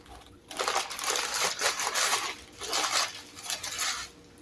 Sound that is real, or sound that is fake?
real